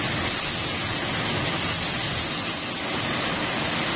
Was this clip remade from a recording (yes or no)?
no